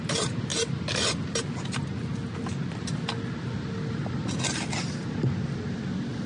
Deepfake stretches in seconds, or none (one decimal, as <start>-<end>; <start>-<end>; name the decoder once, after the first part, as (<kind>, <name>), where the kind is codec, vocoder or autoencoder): none